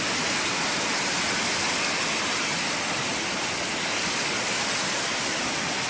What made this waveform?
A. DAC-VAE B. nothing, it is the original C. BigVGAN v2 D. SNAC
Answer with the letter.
B